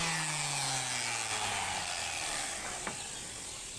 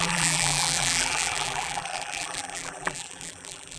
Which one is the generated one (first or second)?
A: second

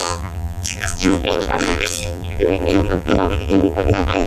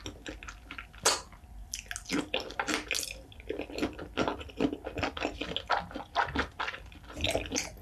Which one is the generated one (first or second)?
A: first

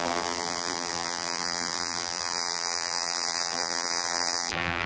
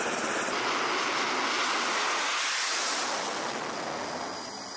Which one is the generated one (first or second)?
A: first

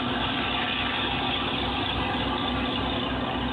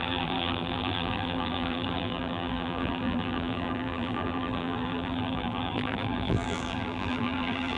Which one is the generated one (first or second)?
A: second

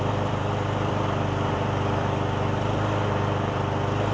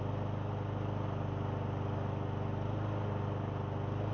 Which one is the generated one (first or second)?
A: first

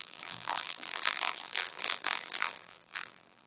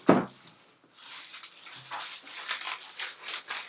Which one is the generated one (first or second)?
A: first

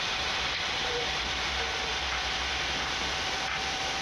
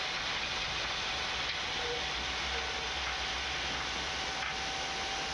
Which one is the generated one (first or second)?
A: first